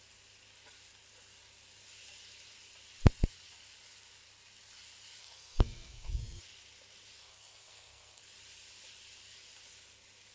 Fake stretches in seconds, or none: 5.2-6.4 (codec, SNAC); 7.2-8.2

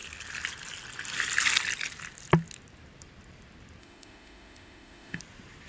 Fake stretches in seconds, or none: 3.8-5.2 (autoencoder, DAC-VAE)